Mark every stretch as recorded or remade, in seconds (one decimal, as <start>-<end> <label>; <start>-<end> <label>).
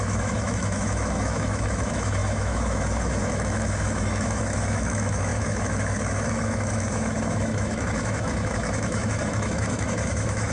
0.0-10.5 remade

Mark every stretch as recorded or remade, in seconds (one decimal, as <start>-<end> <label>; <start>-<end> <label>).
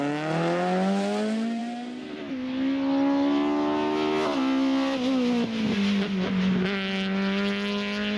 0.0-8.2 recorded